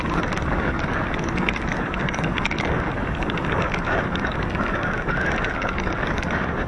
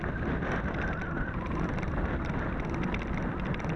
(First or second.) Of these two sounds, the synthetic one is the first